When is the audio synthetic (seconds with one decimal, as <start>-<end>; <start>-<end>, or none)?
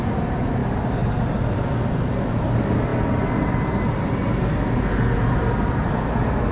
none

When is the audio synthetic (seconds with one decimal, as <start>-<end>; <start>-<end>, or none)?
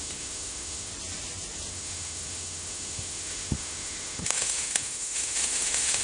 0.0-0.9; 1.7-6.0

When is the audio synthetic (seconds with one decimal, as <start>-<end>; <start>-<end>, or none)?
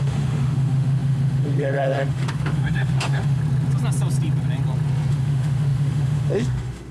0.0-3.4; 5.1-6.9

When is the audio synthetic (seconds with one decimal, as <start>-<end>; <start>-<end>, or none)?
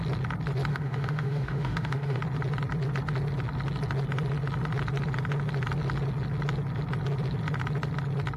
0.7-2.2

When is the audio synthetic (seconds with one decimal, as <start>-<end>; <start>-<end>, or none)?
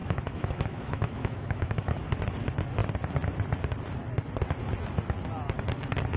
0.0-2.1